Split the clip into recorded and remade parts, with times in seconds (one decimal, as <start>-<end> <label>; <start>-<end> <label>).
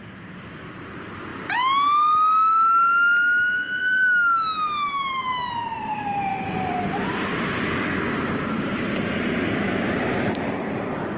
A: 0.0-1.3 remade; 1.3-5.8 recorded; 5.8-11.2 remade